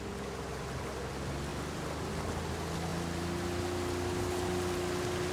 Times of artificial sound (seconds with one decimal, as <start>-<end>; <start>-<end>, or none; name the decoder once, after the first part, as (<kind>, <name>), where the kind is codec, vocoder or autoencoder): none